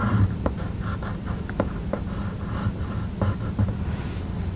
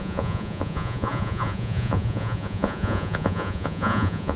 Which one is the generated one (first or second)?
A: second